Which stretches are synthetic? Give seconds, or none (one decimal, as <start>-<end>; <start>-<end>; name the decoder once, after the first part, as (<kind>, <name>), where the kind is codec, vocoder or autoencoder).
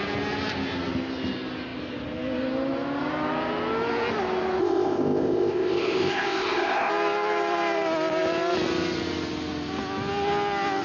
4.6-6.9 (codec, ZipCodec)